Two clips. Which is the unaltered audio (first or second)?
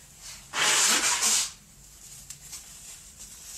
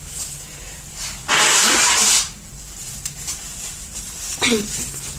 first